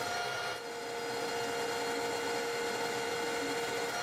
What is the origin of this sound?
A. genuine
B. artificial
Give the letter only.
A